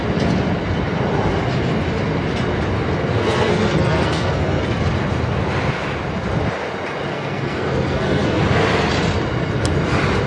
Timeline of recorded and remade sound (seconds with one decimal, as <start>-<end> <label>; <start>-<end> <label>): 0.0-3.2 recorded; 3.2-4.8 remade; 4.8-7.1 recorded; 7.1-8.4 remade; 8.4-10.3 recorded